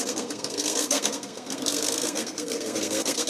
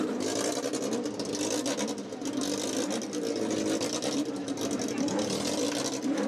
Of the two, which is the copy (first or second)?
first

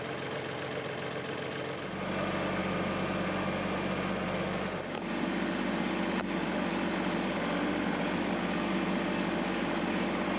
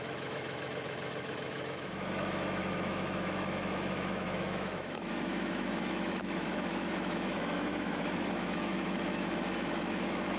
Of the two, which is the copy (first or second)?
second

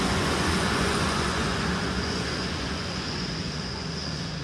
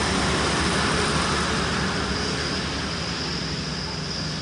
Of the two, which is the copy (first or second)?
first